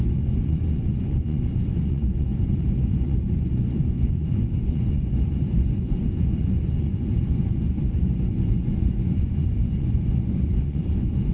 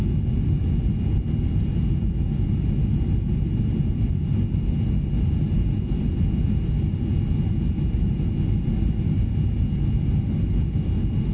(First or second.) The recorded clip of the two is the second